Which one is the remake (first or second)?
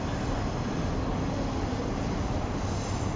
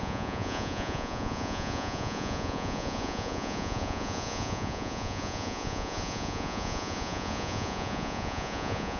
second